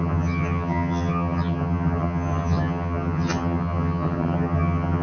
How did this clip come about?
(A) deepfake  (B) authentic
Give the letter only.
A